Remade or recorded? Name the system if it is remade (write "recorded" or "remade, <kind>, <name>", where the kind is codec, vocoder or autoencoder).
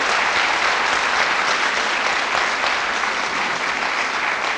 recorded